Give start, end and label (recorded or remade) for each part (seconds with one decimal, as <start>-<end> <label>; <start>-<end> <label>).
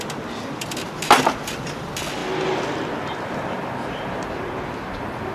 0.0-5.3 recorded